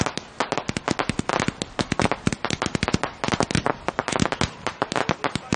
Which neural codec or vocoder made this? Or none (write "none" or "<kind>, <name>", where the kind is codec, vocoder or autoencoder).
none